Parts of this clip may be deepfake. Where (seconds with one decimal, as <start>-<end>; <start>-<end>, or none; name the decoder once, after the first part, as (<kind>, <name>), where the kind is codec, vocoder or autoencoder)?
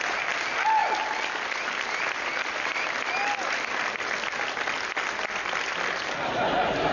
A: none